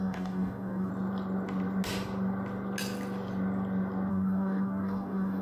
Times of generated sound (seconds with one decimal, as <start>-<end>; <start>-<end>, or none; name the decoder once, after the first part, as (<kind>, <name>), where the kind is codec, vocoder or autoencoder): 0.0-0.9 (codec, DAC); 4.1-5.4